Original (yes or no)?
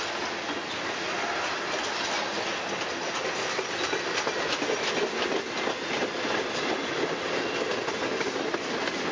yes